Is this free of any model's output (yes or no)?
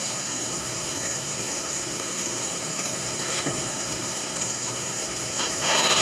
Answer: no